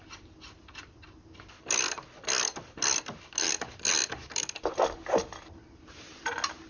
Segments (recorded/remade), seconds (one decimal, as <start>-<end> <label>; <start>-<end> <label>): 0.0-6.7 recorded